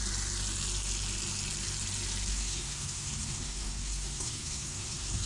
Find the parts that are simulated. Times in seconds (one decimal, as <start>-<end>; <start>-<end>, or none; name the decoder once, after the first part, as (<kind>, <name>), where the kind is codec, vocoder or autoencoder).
2.3-5.3 (codec, SNAC)